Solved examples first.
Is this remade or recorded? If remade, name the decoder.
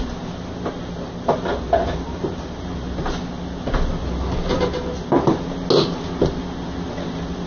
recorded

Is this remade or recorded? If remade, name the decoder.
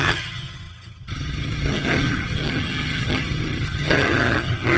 remade, vocoder, HiFi-GAN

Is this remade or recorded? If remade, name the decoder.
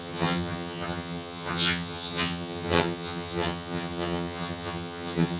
remade, vocoder, HiFi-GAN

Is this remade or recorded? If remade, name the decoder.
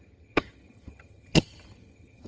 remade, vocoder, HiFi-GAN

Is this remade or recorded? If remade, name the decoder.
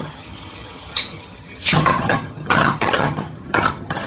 remade, vocoder, HiFi-GAN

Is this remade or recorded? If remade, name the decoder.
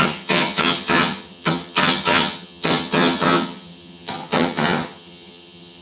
remade, vocoder, HiFi-GAN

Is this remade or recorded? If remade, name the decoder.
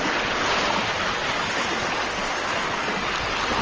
recorded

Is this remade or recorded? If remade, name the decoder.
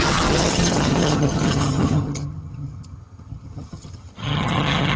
remade, vocoder, HiFi-GAN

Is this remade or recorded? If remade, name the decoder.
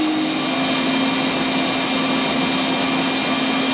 recorded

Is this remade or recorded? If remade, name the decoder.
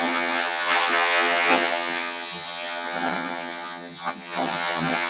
remade, vocoder, HiFi-GAN